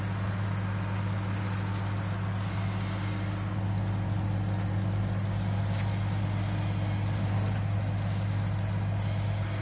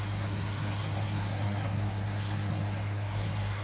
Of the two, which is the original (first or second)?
first